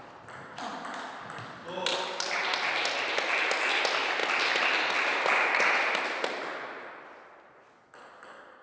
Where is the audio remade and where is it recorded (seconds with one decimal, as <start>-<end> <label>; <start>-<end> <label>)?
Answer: 0.0-8.6 recorded